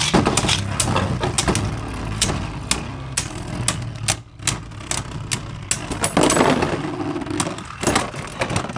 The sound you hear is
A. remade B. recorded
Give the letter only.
B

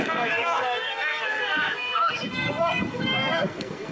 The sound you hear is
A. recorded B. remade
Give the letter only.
B